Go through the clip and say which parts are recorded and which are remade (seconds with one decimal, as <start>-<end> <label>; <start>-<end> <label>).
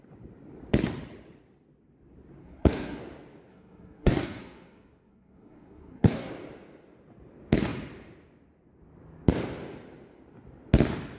0.0-2.4 recorded; 2.4-3.0 remade; 3.0-3.5 recorded; 3.5-6.3 remade; 6.3-11.2 recorded